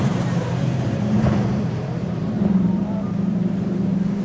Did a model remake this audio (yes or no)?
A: yes